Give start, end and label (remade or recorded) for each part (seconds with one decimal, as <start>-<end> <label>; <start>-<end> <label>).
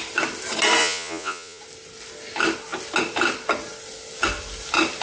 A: 0.0-0.8 recorded; 0.8-1.6 remade; 1.6-5.0 recorded